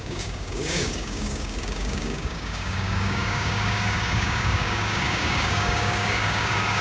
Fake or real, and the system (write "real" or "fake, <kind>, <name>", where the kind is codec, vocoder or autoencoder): fake, codec, DAC